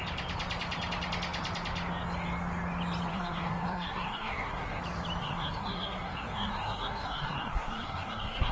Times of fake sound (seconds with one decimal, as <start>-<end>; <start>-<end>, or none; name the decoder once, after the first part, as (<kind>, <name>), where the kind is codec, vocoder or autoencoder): 3.1-4.8 (codec, SNAC); 5.2-8.5